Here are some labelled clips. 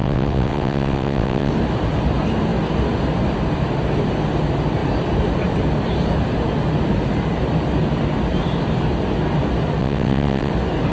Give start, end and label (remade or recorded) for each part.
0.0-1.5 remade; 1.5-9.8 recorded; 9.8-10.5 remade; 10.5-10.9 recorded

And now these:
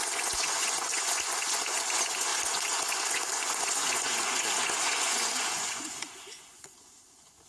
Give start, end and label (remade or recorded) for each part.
0.0-7.5 remade

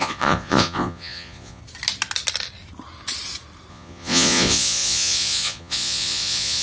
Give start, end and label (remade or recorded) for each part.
0.0-1.6 remade; 1.6-3.7 recorded; 3.7-6.6 remade